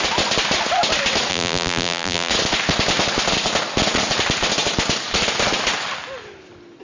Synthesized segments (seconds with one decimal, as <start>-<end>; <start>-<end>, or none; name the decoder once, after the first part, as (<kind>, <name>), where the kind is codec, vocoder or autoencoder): 1.3-2.3 (vocoder, BigVGAN v2)